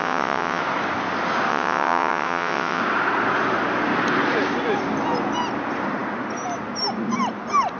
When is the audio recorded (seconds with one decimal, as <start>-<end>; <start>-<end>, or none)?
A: 0.6-1.5; 2.8-7.8